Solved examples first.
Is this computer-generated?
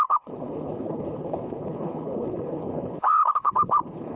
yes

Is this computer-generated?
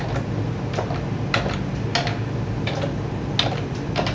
no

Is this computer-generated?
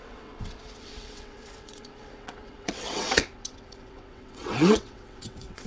yes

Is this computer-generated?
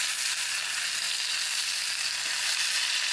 no